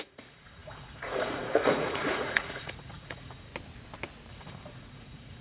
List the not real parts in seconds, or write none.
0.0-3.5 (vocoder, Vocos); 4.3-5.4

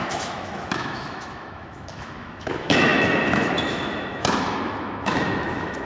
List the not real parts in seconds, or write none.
0.0-5.9 (autoencoder, DAC-VAE)

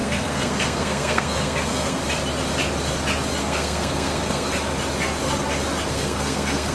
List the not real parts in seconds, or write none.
0.0-2.0 (codec, SNAC); 3.4-4.5; 5.9-6.7

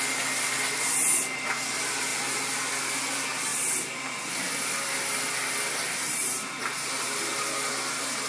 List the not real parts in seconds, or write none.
2.1-2.7 (vocoder, BigVGAN v2); 3.5-7.2

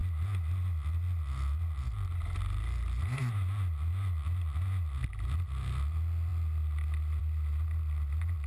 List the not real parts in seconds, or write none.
none

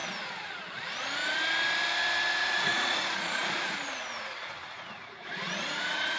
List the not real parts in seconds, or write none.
2.3-6.2 (vocoder, Vocos)

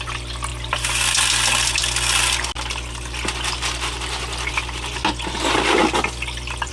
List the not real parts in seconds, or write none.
none

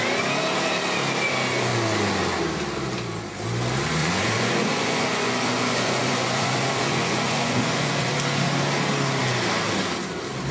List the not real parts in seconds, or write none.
4.0-8.1 (vocoder, Vocos)